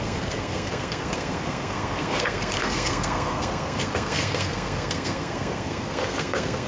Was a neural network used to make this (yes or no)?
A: yes